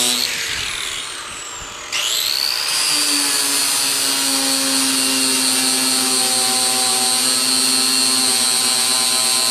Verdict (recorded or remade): recorded